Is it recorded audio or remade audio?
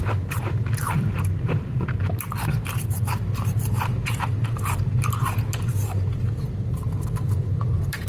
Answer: remade